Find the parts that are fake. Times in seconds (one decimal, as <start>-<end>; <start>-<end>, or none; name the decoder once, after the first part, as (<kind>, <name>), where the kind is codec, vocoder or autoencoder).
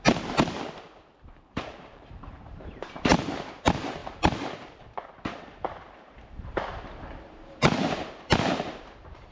0.0-9.3 (vocoder, BigVGAN v2)